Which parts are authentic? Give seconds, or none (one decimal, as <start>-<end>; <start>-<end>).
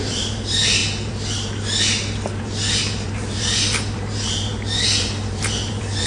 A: 4.5-5.0